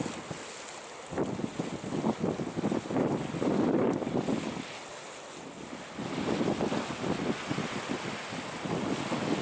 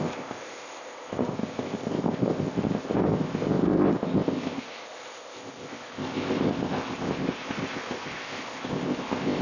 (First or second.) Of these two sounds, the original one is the first